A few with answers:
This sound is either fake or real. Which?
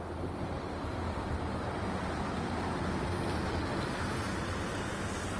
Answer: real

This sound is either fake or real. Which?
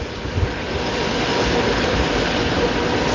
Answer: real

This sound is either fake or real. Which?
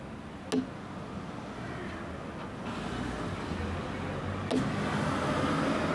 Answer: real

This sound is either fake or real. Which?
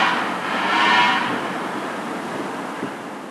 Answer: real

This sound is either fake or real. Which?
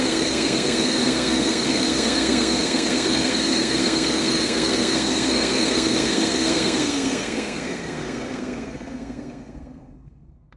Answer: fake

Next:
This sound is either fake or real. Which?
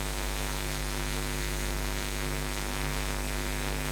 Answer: fake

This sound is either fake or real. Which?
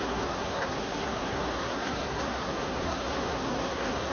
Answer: fake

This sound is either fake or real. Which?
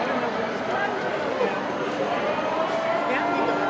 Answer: real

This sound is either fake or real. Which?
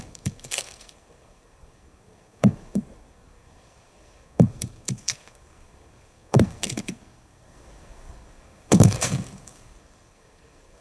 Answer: fake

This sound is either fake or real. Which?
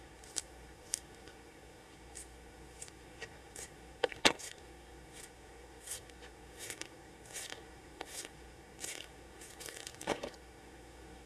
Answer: fake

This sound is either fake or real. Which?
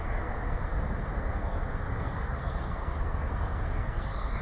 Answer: fake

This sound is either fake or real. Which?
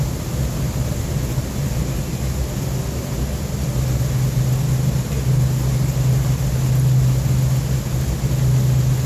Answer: real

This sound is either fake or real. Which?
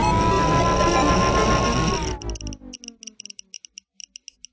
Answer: real